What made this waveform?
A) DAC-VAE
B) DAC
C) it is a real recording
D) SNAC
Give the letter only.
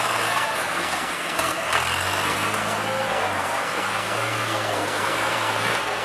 D